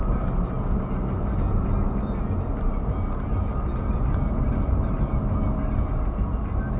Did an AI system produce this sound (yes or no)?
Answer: no